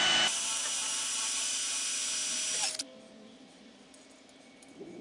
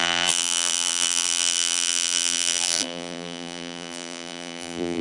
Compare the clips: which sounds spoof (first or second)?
second